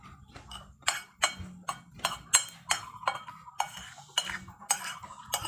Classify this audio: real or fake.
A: real